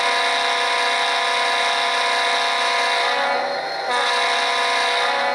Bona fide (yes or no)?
yes